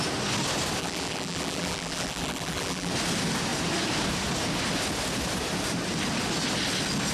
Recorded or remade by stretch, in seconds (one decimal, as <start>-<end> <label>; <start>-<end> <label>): 0.0-0.8 recorded; 0.8-2.9 remade; 2.9-7.1 recorded